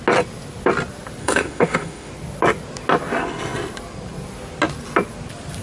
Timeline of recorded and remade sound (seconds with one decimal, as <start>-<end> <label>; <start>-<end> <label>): 0.0-1.2 recorded; 1.2-2.1 remade; 2.1-5.6 recorded